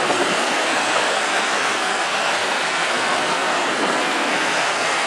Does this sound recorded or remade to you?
remade